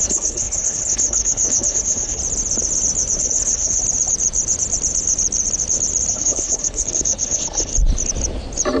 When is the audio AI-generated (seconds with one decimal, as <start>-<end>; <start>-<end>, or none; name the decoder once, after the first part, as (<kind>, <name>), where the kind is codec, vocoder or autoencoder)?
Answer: 0.0-2.2 (codec, HILCodec); 3.2-3.8; 6.1-7.7